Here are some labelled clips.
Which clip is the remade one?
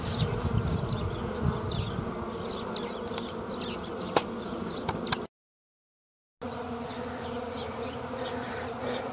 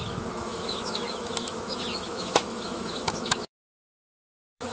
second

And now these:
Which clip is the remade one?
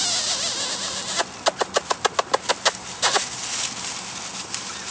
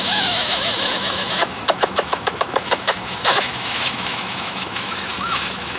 second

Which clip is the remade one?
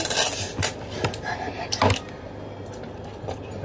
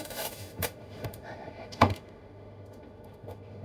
second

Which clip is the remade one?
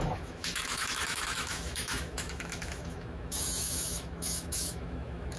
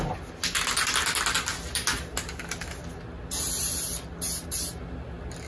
first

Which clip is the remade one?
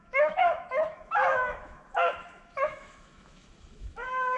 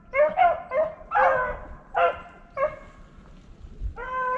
first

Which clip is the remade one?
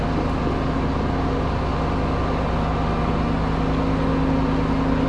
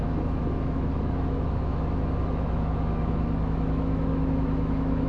second